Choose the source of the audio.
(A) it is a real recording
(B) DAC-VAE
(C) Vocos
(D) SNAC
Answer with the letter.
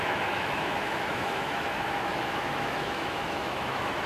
B